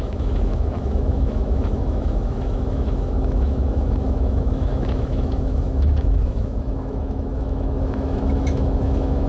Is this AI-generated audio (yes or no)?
yes